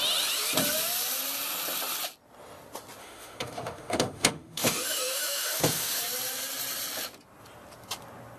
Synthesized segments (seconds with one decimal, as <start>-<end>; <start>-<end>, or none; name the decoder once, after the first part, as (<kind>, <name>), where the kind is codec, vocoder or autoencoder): 3.0-6.0 (autoencoder, DAC-VAE)